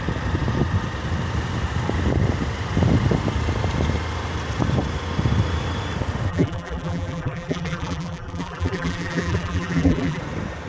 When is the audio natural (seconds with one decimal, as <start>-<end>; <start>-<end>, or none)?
0.0-6.3; 10.2-10.7

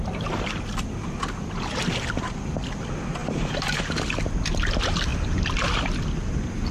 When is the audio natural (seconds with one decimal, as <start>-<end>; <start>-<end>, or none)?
0.0-3.2; 3.8-5.1; 6.0-6.7